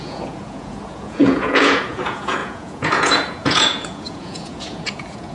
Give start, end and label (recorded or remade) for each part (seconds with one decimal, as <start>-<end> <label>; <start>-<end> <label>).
0.0-5.3 remade